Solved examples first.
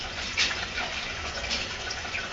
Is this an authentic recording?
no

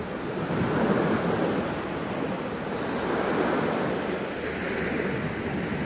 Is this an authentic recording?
yes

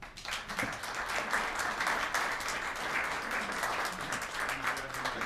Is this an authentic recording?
yes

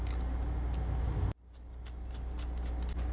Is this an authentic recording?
yes